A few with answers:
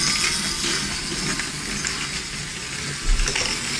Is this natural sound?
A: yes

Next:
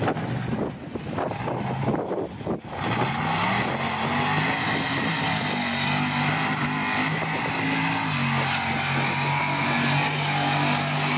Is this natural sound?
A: yes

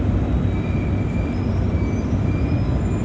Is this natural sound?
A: yes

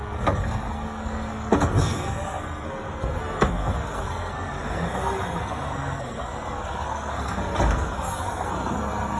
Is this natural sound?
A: no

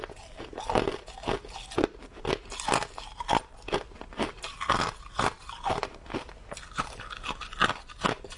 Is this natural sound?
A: yes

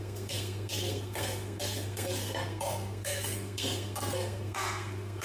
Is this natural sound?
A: no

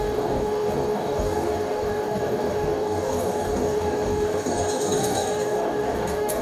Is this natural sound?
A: no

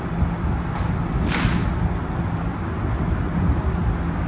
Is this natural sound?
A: yes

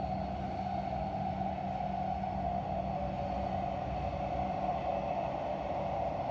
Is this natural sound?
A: yes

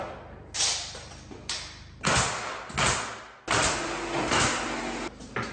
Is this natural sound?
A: yes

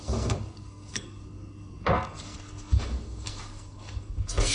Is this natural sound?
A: no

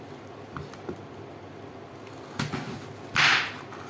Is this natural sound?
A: yes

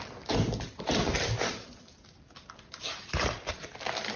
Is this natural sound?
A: yes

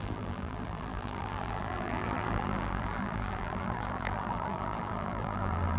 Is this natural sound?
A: no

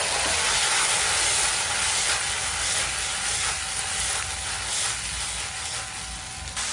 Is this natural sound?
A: yes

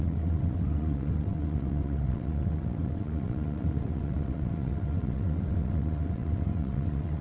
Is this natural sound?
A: no